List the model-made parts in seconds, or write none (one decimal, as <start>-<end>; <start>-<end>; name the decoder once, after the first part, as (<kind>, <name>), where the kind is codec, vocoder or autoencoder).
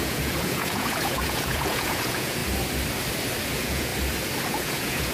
0.0-2.4 (vocoder, Vocos); 3.4-3.9; 4.5-5.1